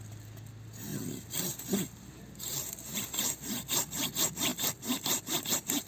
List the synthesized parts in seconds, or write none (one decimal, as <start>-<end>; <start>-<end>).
none